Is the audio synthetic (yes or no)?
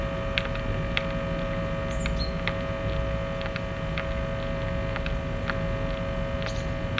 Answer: no